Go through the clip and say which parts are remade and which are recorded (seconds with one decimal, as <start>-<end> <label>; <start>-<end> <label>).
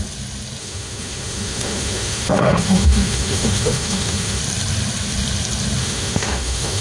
0.0-0.6 recorded; 0.6-4.4 remade; 4.4-5.8 recorded; 5.8-6.8 remade